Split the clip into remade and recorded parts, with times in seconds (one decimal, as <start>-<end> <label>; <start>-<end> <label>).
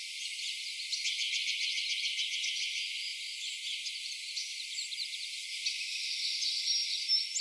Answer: 0.0-7.4 recorded